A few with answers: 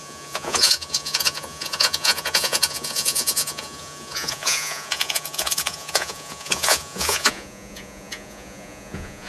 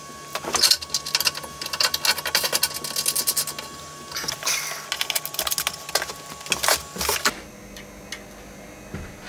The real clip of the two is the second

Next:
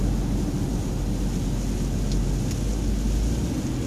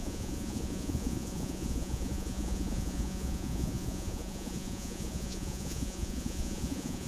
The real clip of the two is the first